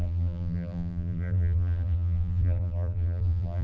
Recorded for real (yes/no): no